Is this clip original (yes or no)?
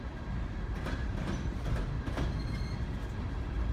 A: yes